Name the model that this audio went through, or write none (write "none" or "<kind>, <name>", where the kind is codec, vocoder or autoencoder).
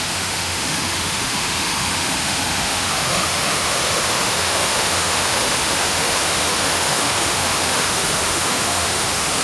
autoencoder, DAC-VAE